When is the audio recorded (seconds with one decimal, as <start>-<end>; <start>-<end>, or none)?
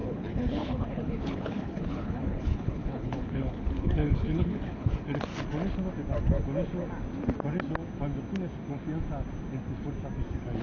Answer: 5.3-10.6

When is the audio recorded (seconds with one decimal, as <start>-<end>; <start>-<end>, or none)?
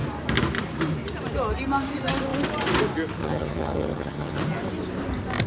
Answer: 0.0-3.2; 4.4-5.5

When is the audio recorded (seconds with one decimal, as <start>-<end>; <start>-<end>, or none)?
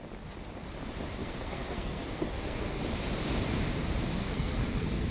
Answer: 0.0-1.2; 2.8-4.2